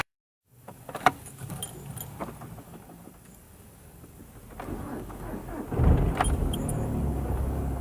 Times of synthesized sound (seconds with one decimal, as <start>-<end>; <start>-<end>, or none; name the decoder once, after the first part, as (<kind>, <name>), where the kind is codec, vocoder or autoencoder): 0.0-1.6 (codec, DAC); 2.6-4.2; 4.8-5.4; 6.4-7.8